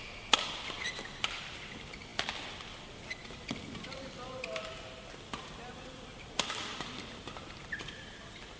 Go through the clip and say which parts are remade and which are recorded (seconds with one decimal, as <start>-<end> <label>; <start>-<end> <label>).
0.0-8.6 recorded